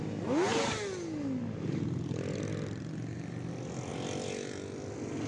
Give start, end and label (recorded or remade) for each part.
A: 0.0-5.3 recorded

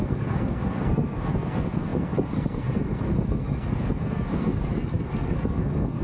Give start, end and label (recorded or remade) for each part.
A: 0.0-6.0 remade

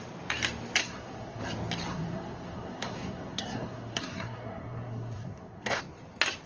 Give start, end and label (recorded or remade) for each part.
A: 0.0-0.8 recorded; 0.8-1.4 remade; 1.4-1.9 recorded; 1.9-5.8 remade; 5.8-6.5 recorded

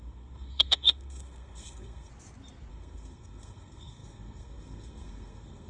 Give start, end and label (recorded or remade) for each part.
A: 0.0-2.1 remade; 2.1-2.7 recorded; 2.7-5.7 remade

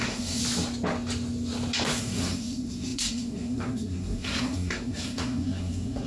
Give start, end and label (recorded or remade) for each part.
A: 0.0-0.4 remade; 0.4-2.0 recorded; 2.0-6.1 remade

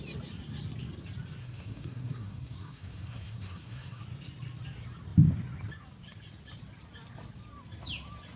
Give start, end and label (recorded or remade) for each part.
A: 0.0-1.4 recorded; 1.4-4.0 remade; 4.0-8.4 recorded

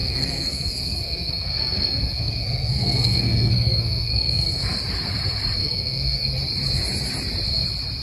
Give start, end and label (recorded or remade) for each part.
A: 0.0-4.8 remade; 4.8-5.6 recorded; 5.6-6.3 remade; 6.3-8.0 recorded

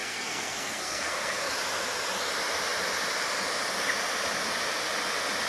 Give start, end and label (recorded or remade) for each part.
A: 0.0-1.5 remade; 1.5-5.5 recorded